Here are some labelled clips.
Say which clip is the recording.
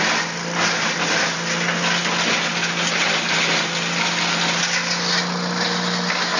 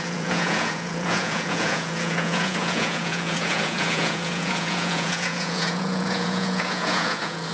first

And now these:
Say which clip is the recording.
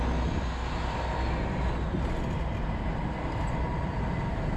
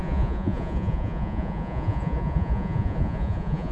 first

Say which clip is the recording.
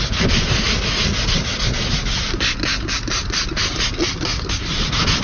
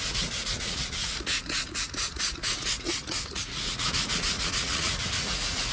first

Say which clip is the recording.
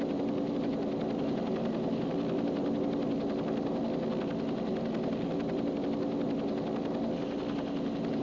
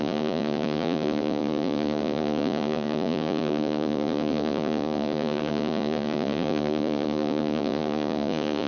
first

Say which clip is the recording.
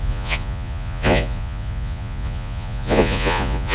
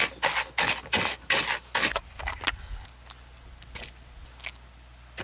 second